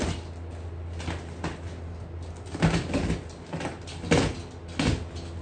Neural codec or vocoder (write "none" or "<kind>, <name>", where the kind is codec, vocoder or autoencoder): none